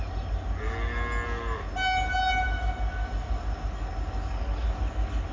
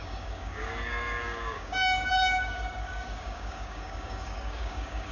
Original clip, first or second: first